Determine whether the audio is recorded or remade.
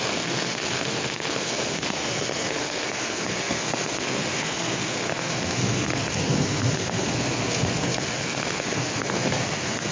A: remade